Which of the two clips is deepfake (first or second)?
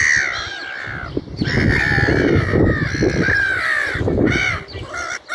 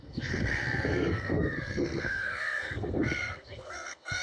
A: second